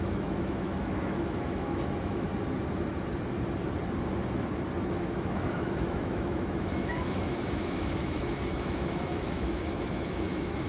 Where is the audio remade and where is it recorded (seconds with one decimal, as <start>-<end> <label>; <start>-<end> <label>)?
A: 0.0-2.3 remade; 2.3-5.0 recorded; 5.0-10.7 remade